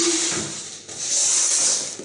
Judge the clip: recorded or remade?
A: recorded